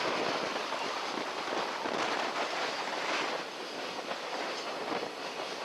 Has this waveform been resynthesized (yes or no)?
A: no